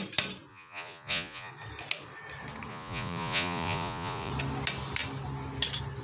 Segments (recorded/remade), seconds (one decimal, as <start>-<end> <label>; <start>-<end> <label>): 0.0-0.5 recorded; 0.5-1.5 remade; 1.5-2.7 recorded; 2.7-4.3 remade; 4.3-6.0 recorded